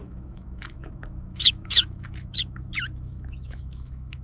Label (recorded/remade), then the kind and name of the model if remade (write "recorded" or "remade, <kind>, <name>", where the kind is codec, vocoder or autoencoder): remade, autoencoder, DAC-VAE